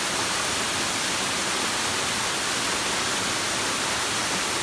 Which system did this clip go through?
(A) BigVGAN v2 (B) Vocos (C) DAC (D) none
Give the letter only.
D